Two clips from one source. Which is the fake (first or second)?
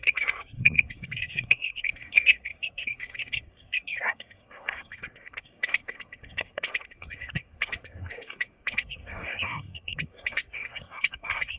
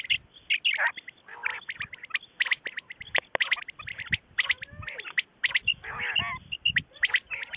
first